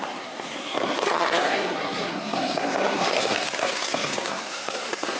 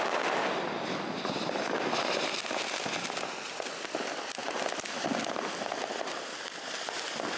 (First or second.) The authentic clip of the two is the second